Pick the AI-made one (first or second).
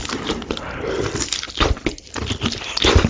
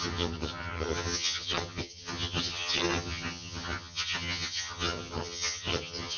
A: second